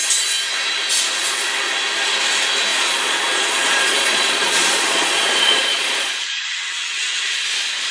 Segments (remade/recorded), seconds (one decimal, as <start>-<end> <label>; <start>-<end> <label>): 0.0-2.7 recorded; 2.7-7.4 remade; 7.4-7.9 recorded